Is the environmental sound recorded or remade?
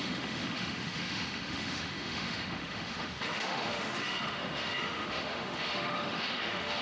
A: remade